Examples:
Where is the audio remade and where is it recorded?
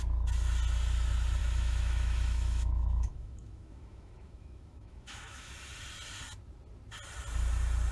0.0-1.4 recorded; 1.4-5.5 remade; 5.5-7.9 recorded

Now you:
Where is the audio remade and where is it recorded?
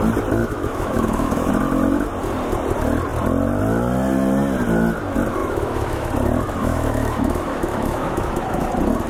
0.0-0.4 recorded; 0.4-1.5 remade; 1.5-5.4 recorded; 5.4-6.1 remade; 6.1-6.6 recorded; 6.6-8.7 remade; 8.7-9.1 recorded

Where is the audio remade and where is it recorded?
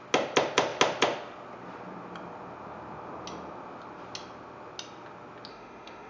0.0-5.5 recorded; 5.5-6.1 remade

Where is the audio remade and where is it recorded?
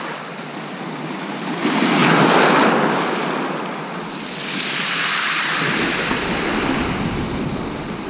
0.0-8.1 recorded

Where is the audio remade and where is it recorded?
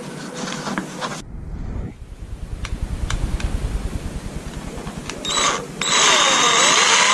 0.0-7.1 recorded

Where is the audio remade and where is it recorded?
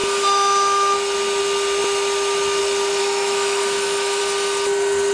0.0-3.0 recorded; 3.0-4.2 remade; 4.2-5.1 recorded